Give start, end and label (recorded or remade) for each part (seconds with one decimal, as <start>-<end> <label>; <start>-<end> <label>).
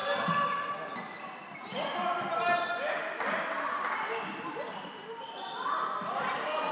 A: 0.0-0.7 remade; 0.7-6.7 recorded